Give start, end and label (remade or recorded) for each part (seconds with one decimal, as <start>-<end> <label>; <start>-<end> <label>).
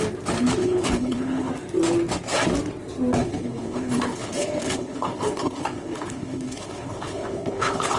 0.0-0.6 recorded; 0.6-1.5 remade; 1.5-3.2 recorded; 3.2-8.0 remade